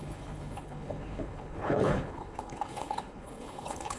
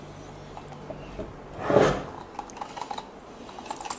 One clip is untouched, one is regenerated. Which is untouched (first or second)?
second